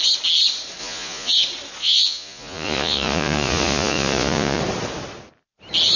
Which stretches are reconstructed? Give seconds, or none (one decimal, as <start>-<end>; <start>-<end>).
0.8-1.3; 1.8-4.6